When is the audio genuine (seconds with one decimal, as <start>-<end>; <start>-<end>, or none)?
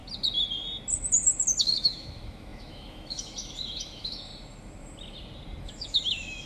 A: 0.0-1.6; 4.3-5.6